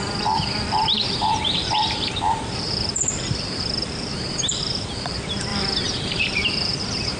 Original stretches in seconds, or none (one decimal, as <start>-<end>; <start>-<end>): none